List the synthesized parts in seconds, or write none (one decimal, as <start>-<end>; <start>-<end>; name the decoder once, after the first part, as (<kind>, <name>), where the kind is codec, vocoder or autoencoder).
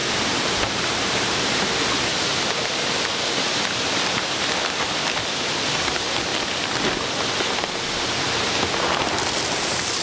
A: 0.0-1.4 (vocoder, BigVGAN v2); 2.1-5.8